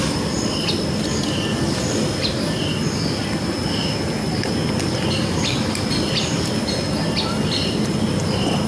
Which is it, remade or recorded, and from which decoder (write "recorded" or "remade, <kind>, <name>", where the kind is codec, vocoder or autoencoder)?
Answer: recorded